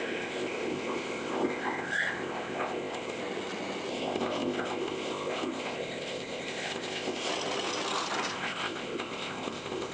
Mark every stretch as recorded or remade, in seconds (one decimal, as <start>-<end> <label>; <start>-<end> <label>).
0.0-3.2 remade; 3.2-3.9 recorded; 3.9-7.3 remade; 7.3-8.3 recorded; 8.3-9.9 remade